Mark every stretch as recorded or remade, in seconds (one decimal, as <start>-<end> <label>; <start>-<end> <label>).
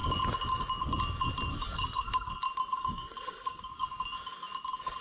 0.0-1.5 recorded; 1.5-2.3 remade; 2.3-2.8 recorded; 2.8-3.6 remade; 3.6-5.0 recorded